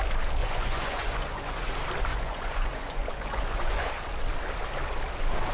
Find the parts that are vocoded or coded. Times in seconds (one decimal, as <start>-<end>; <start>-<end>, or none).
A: 0.4-1.7; 2.1-3.9